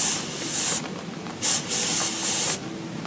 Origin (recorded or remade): recorded